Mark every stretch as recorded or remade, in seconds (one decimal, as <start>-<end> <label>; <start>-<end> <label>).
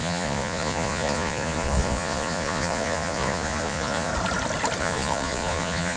0.0-4.1 remade; 4.1-4.8 recorded; 4.8-6.0 remade